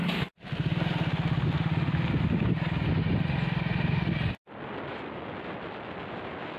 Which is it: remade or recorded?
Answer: recorded